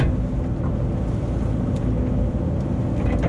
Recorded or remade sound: recorded